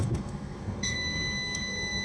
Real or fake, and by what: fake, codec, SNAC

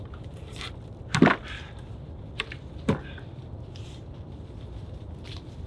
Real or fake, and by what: fake, vocoder, BigVGAN v2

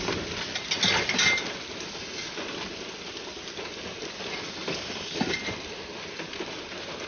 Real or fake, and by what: real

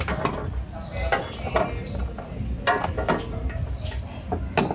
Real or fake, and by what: real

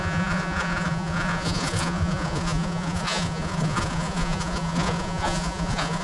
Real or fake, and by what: fake, vocoder, Vocos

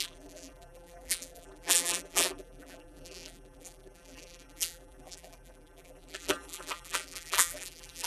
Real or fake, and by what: fake, vocoder, BigVGAN v2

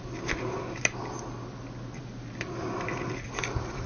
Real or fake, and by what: real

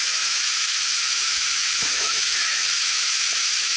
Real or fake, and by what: fake, autoencoder, DAC-VAE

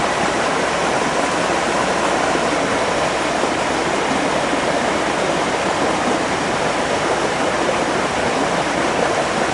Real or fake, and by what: real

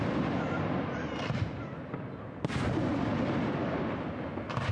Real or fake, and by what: real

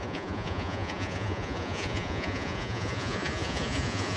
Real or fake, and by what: fake, vocoder, Vocos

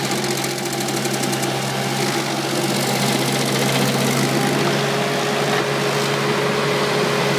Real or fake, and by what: real